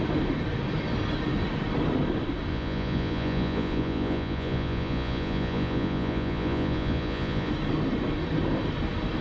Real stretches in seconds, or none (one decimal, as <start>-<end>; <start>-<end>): 0.0-2.5; 7.5-9.2